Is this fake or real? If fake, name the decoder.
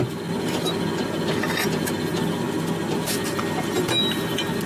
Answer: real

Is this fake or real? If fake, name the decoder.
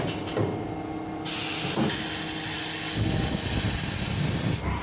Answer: real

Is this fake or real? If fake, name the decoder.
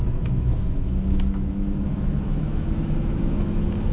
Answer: fake, autoencoder, DAC-VAE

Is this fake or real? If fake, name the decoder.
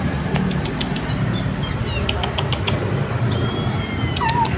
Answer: real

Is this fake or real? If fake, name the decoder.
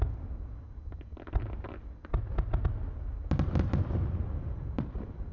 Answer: real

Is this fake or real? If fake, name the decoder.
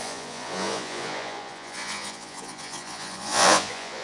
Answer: fake, vocoder, Vocos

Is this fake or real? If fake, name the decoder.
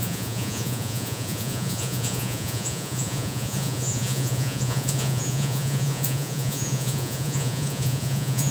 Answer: fake, vocoder, Vocos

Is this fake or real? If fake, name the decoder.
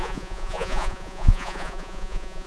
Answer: fake, vocoder, Vocos